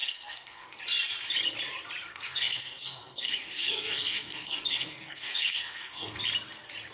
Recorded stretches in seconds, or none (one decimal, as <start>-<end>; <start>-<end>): 0.8-2.1; 6.2-6.9